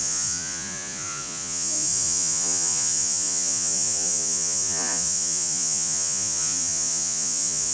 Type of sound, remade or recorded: remade